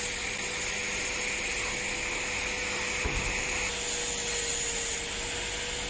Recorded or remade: recorded